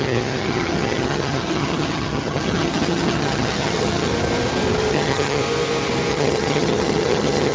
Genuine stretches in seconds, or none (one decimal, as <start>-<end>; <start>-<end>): 4.1-4.9; 5.4-6.1